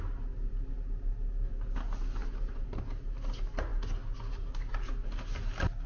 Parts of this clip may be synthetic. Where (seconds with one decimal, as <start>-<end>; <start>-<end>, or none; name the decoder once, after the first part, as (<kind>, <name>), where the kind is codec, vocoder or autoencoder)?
2.2-2.8 (vocoder, BigVGAN v2)